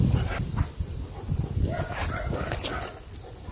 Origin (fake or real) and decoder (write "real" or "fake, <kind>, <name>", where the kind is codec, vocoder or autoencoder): real